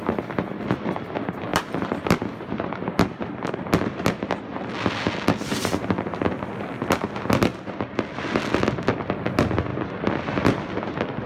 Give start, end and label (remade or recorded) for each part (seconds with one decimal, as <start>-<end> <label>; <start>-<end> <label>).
0.0-1.5 recorded; 1.5-3.5 remade; 3.5-9.7 recorded; 9.7-11.3 remade